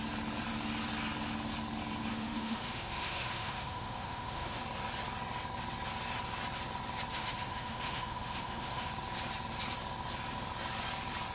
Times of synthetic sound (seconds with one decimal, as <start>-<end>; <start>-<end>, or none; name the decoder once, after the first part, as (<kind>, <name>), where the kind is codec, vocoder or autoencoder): 2.1-4.6 (autoencoder, DAC-VAE); 7.1-8.9